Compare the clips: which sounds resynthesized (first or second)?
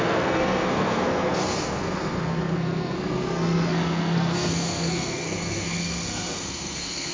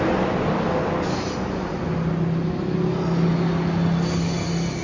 first